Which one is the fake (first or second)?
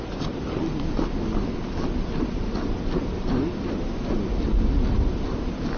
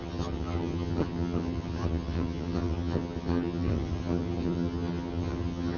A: second